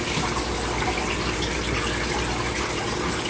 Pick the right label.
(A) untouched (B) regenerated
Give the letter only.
A